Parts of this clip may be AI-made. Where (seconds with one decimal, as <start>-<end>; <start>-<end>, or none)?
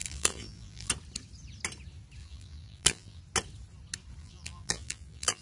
0.0-0.9; 2.2-3.2; 4.2-5.4